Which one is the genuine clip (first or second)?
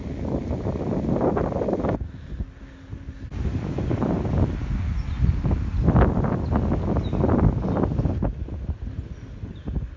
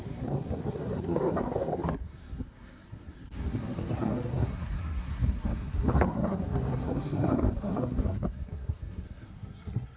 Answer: first